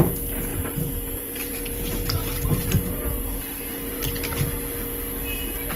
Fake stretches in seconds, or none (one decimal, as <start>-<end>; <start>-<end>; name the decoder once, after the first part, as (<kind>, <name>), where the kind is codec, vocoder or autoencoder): 0.5-4.0 (vocoder, BigVGAN v2)